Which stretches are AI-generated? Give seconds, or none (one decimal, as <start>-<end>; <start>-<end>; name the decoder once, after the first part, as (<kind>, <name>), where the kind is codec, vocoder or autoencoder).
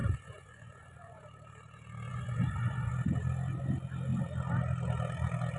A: 0.0-1.2 (vocoder, Vocos); 2.1-2.9